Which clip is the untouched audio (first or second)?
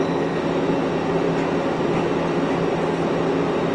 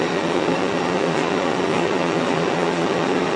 first